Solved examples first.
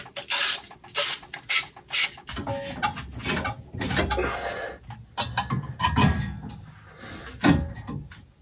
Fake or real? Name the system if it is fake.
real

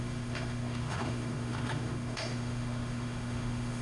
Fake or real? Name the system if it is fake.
fake, autoencoder, DAC-VAE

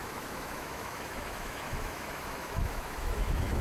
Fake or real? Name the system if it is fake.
fake, autoencoder, DAC-VAE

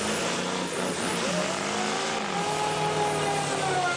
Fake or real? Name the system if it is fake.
real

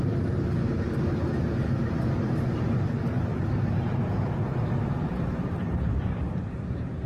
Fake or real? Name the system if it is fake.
real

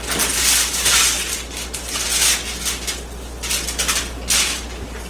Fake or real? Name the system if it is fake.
real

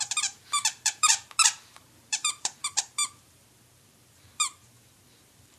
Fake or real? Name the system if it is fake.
fake, vocoder, BigVGAN v2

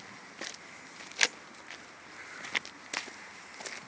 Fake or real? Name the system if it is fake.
real